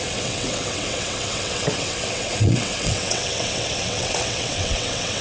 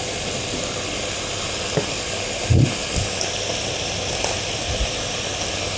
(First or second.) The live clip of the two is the second